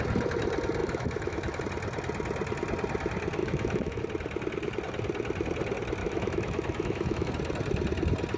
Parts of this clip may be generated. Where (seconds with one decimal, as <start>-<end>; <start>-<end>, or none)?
0.8-1.6; 3.4-4.0; 6.0-7.3